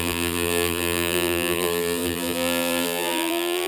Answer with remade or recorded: remade